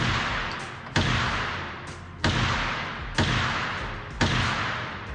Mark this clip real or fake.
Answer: real